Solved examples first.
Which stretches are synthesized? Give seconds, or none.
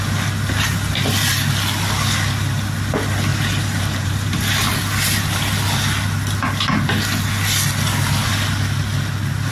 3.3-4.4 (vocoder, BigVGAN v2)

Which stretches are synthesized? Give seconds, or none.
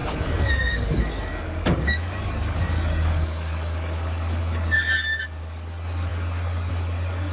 0.0-7.3 (codec, DAC)